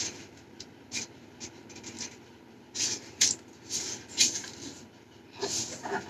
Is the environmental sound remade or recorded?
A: recorded